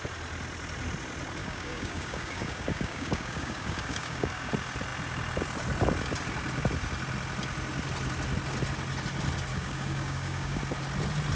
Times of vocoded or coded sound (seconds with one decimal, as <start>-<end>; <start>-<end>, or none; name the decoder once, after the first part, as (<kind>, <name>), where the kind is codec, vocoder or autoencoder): 1.4-4.5 (codec, DAC); 9.5-10.6